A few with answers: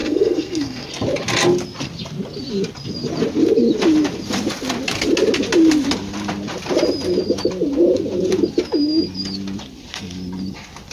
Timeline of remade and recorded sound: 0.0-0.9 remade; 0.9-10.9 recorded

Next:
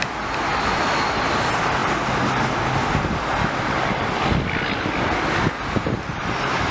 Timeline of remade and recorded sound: 0.0-6.7 recorded

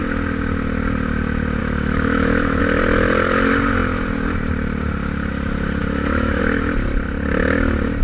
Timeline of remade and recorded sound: 0.0-1.6 recorded; 1.6-2.6 remade; 2.6-5.8 recorded; 5.8-6.4 remade; 6.4-8.0 recorded

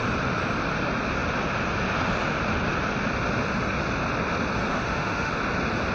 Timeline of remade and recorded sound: 0.0-4.7 recorded; 4.7-5.3 remade; 5.3-5.9 recorded

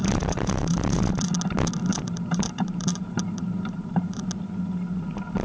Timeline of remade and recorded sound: 0.0-1.0 remade; 1.0-1.9 recorded; 1.9-4.2 remade; 4.2-5.4 recorded